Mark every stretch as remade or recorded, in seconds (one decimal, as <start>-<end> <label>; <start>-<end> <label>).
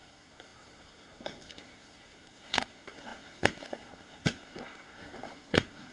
0.0-5.9 remade